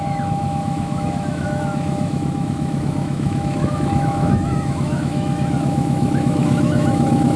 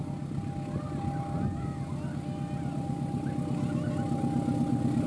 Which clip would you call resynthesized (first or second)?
first